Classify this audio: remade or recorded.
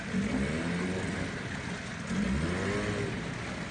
recorded